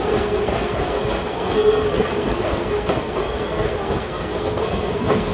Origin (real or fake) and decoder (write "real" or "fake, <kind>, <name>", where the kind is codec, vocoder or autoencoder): fake, codec, SNAC